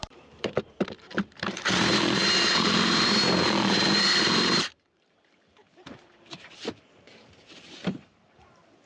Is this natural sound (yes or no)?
no